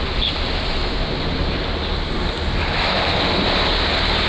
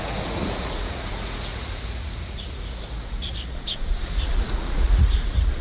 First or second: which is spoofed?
second